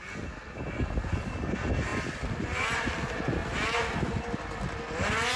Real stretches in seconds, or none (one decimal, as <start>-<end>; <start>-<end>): 0.0-5.4